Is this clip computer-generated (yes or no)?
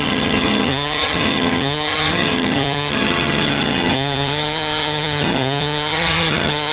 yes